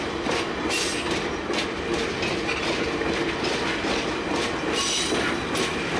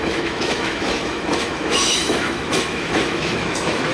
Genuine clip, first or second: first